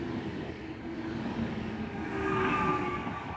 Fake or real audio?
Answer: fake